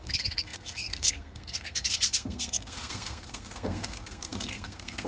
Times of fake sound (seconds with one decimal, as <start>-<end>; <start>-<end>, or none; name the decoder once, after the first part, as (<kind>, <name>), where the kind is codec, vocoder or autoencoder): 0.0-5.1 (codec, SNAC)

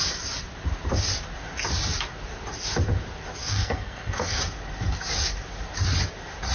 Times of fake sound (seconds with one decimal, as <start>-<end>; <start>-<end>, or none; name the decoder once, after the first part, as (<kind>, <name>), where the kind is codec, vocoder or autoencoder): 3.4-4.4 (codec, SNAC)

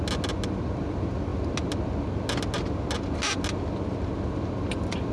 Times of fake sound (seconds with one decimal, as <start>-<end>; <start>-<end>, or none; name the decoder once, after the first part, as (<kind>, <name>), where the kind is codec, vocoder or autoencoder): none

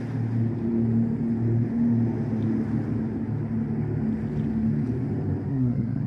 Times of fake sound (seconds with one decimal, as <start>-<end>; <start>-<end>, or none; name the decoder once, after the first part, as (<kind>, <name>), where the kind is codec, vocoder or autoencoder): 5.5-6.1 (codec, SNAC)

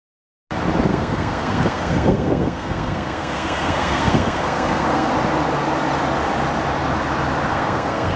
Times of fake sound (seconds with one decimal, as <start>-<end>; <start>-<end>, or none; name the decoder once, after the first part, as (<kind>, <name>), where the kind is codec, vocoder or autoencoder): 0.9-5.1 (codec, SNAC); 7.5-8.2